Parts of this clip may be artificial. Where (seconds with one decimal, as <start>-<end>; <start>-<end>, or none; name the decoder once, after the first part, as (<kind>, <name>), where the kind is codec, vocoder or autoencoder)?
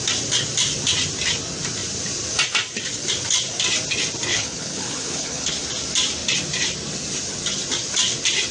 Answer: 4.3-5.5 (codec, HILCodec)